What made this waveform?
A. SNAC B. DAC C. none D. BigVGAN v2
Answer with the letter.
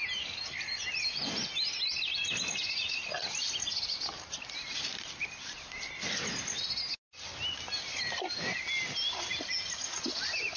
C